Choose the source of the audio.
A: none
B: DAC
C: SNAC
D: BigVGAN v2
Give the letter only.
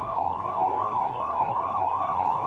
C